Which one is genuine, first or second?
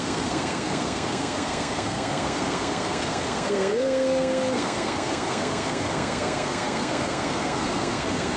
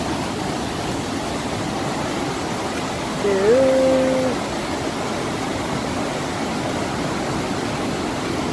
second